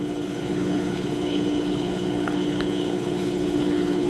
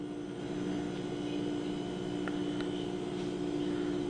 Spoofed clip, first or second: first